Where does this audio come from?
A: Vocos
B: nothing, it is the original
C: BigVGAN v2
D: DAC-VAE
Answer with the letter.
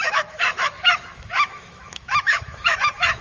D